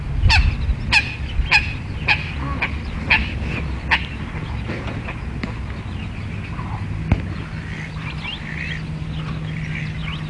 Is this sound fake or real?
real